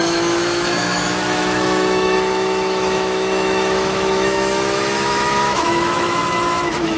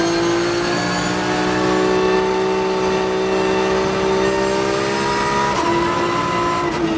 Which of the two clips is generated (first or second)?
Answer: first